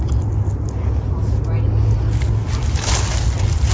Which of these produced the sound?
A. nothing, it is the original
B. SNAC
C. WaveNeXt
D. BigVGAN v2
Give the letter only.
A